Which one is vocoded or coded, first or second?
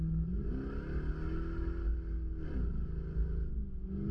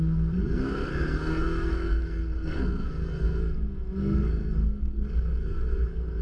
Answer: second